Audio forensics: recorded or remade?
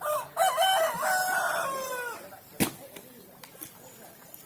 recorded